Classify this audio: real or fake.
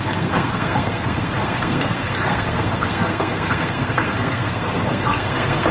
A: fake